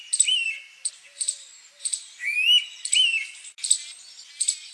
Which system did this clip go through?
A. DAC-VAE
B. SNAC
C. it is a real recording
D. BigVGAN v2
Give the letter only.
C